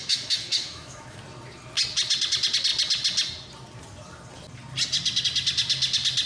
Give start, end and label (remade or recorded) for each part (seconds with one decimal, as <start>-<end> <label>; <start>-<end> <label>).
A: 0.0-1.2 remade; 1.2-6.3 recorded

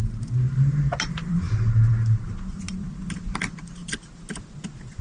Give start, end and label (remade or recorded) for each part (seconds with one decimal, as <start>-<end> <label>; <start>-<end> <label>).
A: 0.0-5.0 recorded

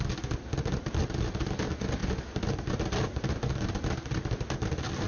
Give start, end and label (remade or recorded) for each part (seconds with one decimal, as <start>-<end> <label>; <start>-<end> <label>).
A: 0.0-5.1 recorded

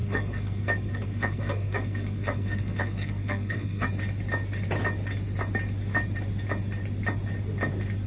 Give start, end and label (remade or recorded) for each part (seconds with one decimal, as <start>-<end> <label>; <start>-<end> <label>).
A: 0.0-3.9 remade; 3.9-8.1 recorded

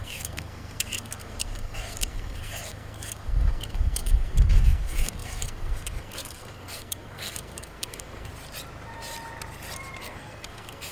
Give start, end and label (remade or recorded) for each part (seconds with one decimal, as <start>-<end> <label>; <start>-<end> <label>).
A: 0.0-8.3 remade; 8.3-10.0 recorded; 10.0-10.9 remade

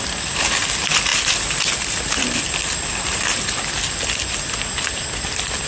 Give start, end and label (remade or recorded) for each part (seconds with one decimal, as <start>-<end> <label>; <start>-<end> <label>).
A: 0.0-5.7 recorded

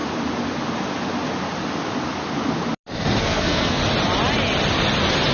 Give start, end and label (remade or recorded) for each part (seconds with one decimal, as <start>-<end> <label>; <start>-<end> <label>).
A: 0.0-3.2 recorded; 3.2-3.8 remade; 3.8-5.3 recorded